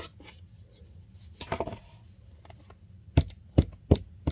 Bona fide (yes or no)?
yes